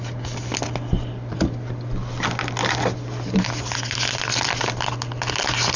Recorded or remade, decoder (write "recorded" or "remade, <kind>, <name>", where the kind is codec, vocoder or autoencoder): recorded